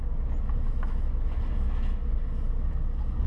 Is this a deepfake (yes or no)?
no